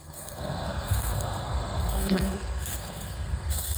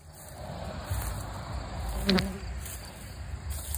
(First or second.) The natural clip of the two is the second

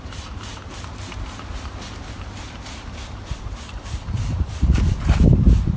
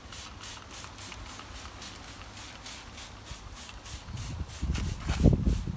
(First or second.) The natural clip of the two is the second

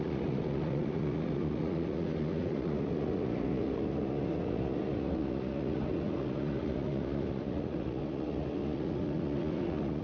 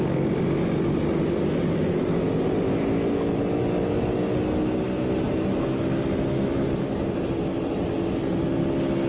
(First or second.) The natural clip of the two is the second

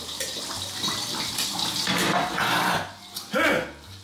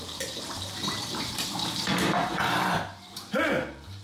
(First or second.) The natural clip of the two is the first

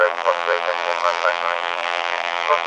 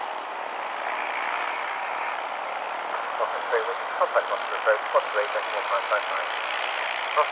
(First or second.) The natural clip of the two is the second